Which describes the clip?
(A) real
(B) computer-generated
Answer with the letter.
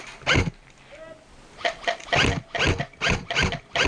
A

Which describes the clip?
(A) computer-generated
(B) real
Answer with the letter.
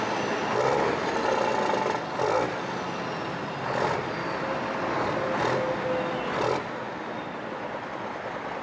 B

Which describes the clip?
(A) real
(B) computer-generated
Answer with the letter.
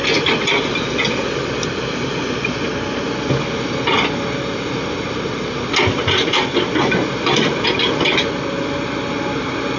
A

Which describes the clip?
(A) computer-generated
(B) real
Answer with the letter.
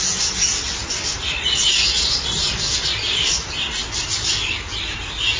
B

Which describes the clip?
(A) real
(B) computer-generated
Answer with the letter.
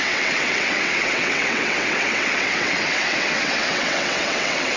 B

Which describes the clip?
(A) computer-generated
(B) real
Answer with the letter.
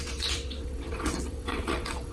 A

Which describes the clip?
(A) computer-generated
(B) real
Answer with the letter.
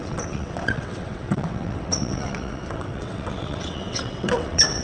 A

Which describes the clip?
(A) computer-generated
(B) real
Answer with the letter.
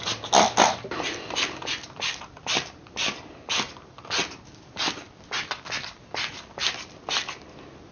B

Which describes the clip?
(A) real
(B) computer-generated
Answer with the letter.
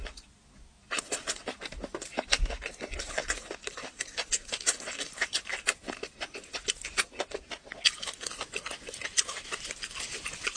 A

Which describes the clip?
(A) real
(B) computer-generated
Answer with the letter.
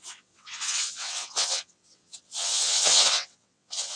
B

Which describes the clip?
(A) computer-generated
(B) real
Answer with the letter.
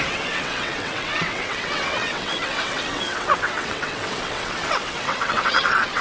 A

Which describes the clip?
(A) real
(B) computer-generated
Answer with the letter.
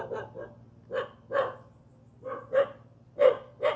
A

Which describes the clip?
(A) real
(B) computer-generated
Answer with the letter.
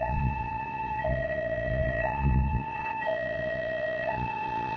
B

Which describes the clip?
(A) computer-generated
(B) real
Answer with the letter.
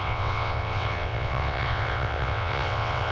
A